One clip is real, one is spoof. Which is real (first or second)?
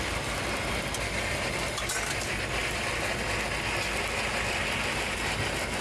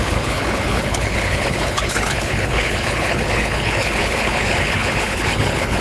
first